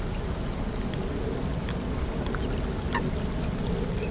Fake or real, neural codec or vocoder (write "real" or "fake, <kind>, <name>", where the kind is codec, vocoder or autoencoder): real